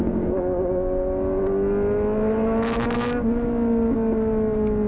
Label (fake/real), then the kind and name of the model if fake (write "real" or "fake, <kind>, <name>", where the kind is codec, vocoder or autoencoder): real